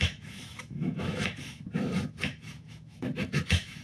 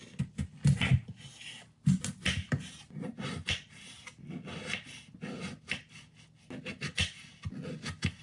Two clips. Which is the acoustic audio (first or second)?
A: second